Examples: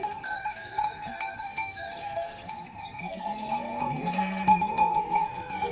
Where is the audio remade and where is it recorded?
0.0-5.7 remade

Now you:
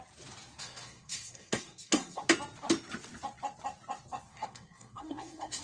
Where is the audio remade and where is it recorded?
0.0-0.6 recorded; 0.6-2.2 remade; 2.2-4.3 recorded; 4.3-5.6 remade

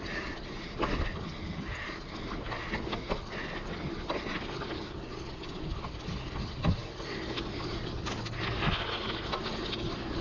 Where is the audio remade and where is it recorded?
0.0-10.2 recorded

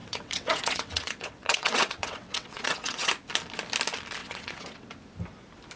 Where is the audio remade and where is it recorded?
0.0-3.1 remade; 3.1-4.2 recorded; 4.2-4.9 remade; 4.9-5.8 recorded

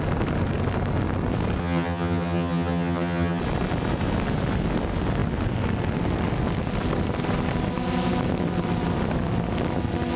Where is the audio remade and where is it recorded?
0.0-1.6 recorded; 1.6-3.4 remade; 3.4-10.2 recorded

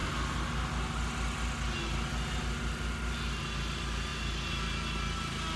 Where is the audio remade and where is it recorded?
0.0-5.6 recorded